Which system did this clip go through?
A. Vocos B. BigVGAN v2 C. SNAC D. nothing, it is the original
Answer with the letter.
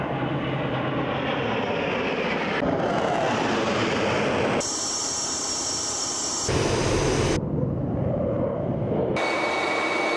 D